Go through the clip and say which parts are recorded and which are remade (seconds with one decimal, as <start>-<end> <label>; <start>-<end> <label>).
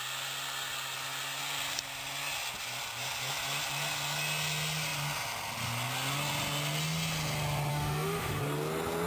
0.0-7.7 recorded; 7.7-8.4 remade; 8.4-9.1 recorded